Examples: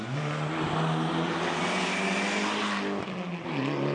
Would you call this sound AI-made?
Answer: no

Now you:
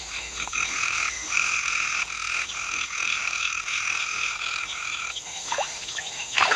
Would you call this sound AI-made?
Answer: yes